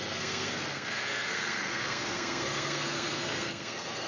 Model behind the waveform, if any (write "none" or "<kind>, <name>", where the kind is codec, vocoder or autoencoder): codec, SNAC